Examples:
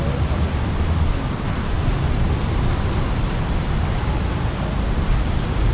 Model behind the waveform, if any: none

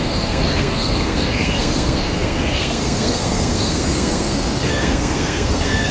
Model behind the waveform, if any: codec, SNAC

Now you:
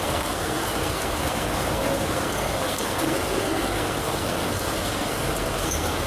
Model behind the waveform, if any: codec, SNAC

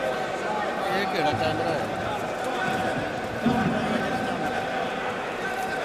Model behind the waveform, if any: none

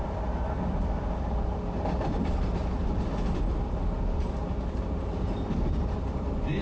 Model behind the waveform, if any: none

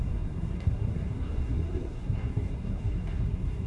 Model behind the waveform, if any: codec, SNAC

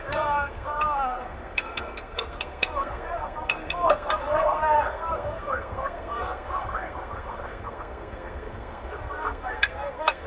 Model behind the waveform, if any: codec, SNAC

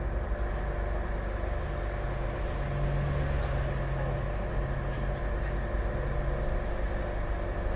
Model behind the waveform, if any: none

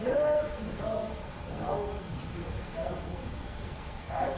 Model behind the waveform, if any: codec, SNAC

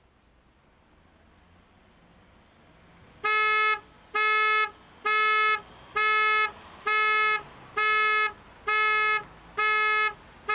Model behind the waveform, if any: none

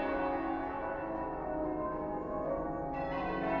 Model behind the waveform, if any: none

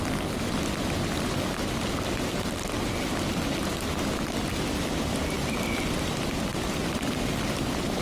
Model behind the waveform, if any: none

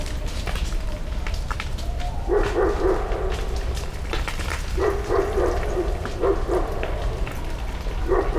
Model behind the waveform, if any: none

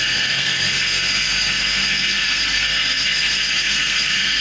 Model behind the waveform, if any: codec, SNAC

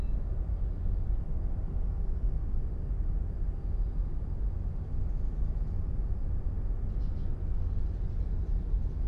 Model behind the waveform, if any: none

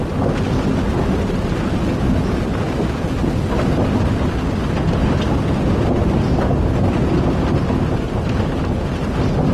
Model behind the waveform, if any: none